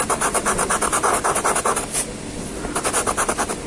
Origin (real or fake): real